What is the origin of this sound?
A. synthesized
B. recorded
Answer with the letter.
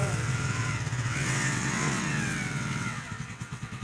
A